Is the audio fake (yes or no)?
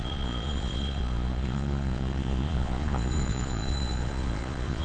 yes